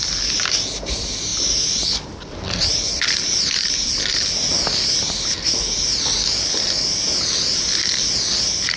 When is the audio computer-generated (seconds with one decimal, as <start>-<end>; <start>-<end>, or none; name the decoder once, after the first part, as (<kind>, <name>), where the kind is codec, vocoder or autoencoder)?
none